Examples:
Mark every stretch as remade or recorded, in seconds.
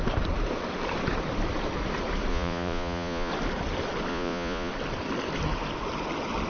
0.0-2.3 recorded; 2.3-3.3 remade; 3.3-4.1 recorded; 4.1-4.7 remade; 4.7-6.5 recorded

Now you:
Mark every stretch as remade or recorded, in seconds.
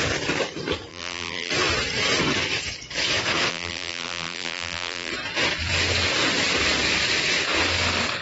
0.0-0.9 recorded; 0.9-1.5 remade; 1.5-3.5 recorded; 3.5-5.1 remade; 5.1-8.2 recorded